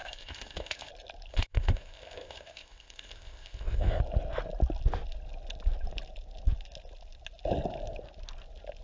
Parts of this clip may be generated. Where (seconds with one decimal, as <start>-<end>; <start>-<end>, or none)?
0.0-0.9; 1.3-4.0